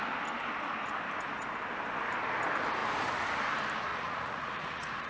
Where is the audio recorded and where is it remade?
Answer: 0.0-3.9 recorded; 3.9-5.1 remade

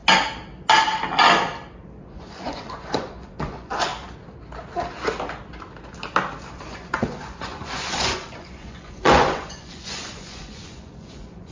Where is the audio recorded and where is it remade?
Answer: 0.0-2.0 recorded; 2.0-3.9 remade; 3.9-6.7 recorded; 6.7-11.5 remade

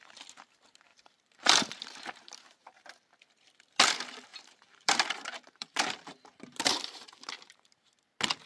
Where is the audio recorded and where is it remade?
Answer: 0.0-0.9 recorded; 0.9-3.1 remade; 3.1-4.3 recorded; 4.3-8.0 remade; 8.0-8.5 recorded

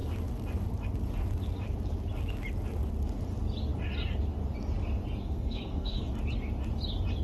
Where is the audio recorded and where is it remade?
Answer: 0.0-5.2 recorded; 5.2-6.1 remade; 6.1-7.2 recorded

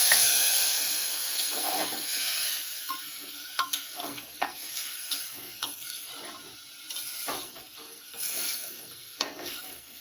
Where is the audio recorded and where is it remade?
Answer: 0.0-6.1 remade; 6.1-7.4 recorded; 7.4-10.0 remade